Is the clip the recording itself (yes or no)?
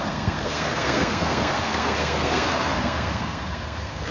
no